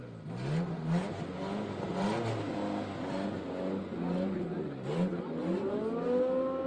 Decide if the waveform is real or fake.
real